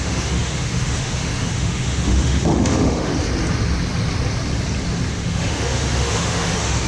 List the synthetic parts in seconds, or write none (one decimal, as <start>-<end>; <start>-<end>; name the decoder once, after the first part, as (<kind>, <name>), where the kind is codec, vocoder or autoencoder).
0.0-3.1 (autoencoder, DAC-VAE); 5.1-6.9